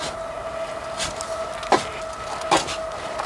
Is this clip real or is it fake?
real